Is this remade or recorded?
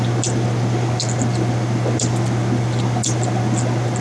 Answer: recorded